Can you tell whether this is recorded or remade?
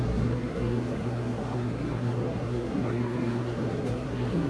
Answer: remade